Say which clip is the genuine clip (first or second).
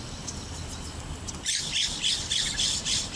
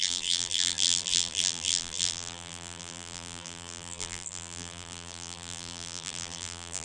first